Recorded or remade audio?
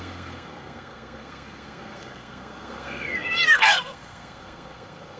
remade